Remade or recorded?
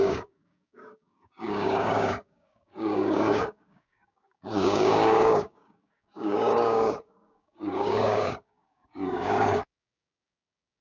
remade